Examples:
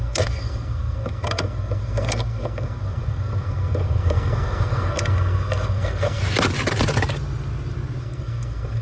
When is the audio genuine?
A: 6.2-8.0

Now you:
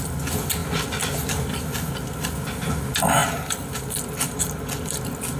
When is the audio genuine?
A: 0.0-5.4

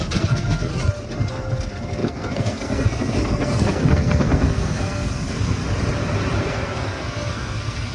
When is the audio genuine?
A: 0.7-1.3; 5.6-6.4

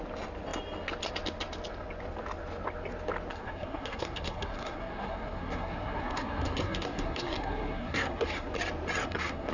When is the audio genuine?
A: 0.0-3.3; 8.5-9.0

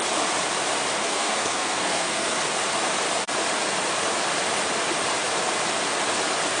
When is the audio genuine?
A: 0.0-1.0; 2.4-6.6

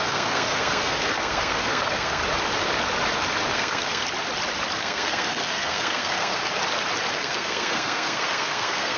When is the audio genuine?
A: 2.2-3.5; 4.0-4.8; 6.4-7.1

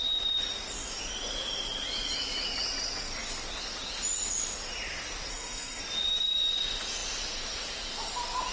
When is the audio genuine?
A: 0.0-5.3; 5.8-8.5

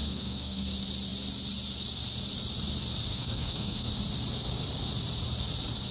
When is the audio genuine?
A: 0.7-3.1; 3.9-5.9